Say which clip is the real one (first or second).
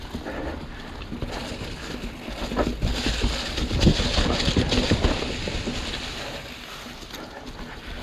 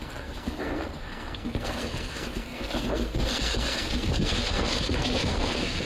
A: first